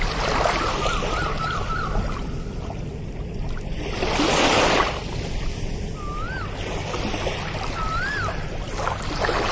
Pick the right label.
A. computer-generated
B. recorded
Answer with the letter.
B